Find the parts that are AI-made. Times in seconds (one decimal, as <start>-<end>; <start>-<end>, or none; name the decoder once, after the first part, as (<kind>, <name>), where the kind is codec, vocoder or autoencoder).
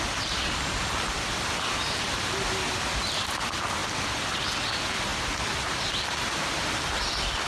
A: none